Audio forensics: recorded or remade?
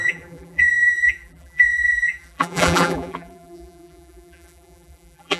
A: remade